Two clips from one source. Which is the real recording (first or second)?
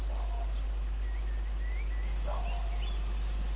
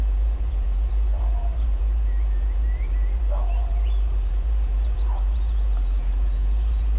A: first